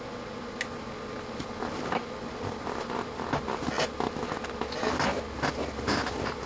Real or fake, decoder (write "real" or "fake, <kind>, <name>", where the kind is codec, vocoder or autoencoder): real